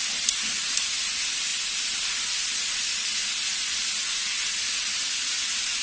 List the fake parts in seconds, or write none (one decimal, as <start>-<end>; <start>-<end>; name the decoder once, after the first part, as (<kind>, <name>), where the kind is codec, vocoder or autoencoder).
none